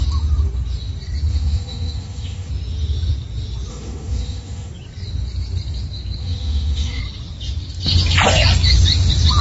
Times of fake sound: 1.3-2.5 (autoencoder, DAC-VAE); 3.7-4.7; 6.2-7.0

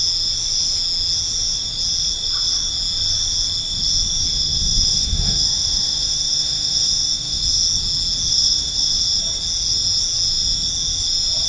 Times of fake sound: 4.3-7.4 (autoencoder, DAC-VAE); 8.3-8.9